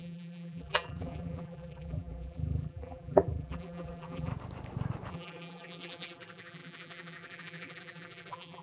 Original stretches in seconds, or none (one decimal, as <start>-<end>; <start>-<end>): 4.3-5.1